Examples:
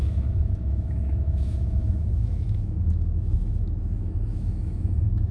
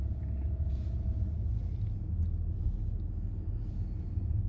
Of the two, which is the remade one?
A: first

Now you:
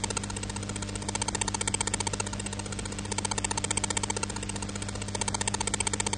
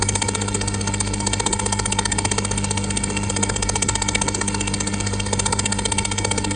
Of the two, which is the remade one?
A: second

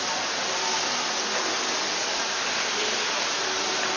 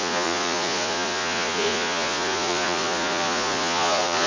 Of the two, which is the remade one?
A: second